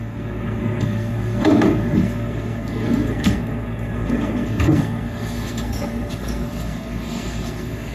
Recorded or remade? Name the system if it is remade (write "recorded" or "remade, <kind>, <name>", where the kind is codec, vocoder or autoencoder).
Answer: remade, codec, SNAC